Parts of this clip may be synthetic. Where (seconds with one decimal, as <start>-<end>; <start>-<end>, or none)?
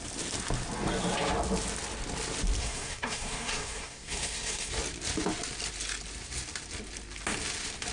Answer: 2.6-4.7